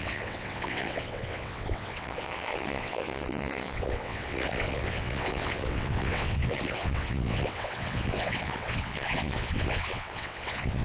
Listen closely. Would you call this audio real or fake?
fake